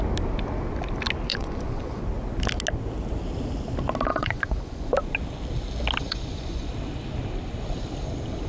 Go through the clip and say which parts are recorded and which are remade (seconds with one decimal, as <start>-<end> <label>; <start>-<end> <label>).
0.0-1.3 recorded; 1.3-2.0 remade; 2.0-4.1 recorded; 4.1-4.9 remade; 4.9-6.0 recorded; 6.0-6.7 remade; 6.7-8.5 recorded